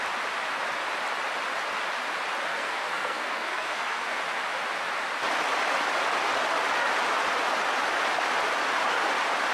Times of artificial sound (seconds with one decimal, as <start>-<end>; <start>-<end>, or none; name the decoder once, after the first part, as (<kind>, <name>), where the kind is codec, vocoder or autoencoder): 2.5-4.2 (codec, SNAC)